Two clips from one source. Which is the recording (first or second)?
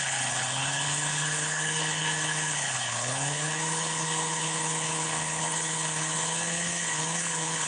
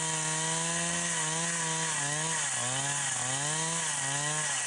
second